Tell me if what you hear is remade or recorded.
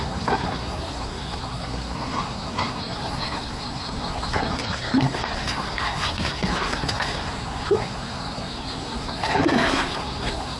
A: remade